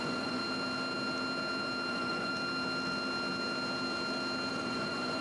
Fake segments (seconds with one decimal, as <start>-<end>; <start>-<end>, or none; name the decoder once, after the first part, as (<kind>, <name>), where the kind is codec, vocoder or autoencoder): 0.0-0.4 (vocoder, Vocos); 1.9-2.3; 4.5-5.2